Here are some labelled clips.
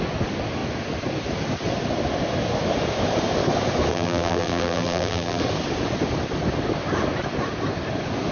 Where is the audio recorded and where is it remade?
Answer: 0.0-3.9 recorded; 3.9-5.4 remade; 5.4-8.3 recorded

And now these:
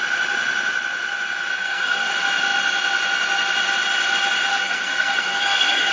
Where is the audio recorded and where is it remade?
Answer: 0.0-1.5 recorded; 1.5-2.1 remade; 2.1-4.5 recorded; 4.5-5.9 remade

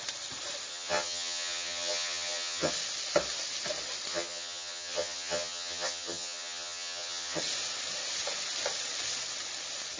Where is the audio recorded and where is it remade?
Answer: 0.0-0.7 recorded; 0.7-2.7 remade; 2.7-4.1 recorded; 4.1-7.4 remade; 7.4-10.0 recorded

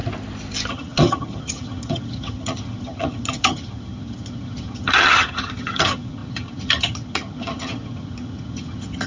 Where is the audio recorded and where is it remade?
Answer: 0.0-0.7 recorded; 0.7-9.1 remade